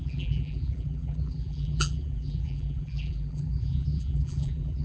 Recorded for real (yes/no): no